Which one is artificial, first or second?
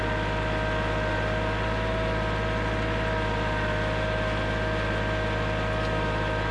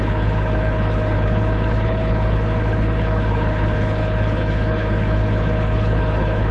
second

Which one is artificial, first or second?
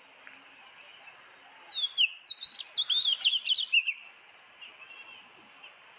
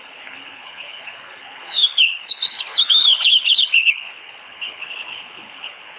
second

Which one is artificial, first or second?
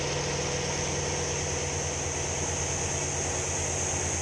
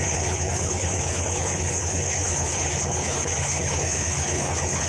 second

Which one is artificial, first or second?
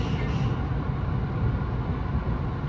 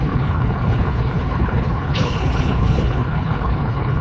second